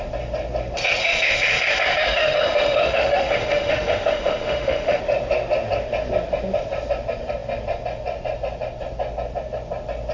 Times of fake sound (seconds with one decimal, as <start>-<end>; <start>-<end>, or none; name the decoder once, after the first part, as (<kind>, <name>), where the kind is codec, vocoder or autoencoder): 1.0-5.0 (autoencoder, DAC-VAE)